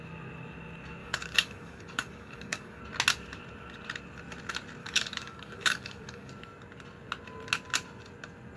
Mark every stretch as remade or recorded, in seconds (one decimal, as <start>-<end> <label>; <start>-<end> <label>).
0.0-1.0 recorded; 1.0-2.8 remade; 2.8-4.8 recorded; 4.8-6.3 remade; 6.3-8.6 recorded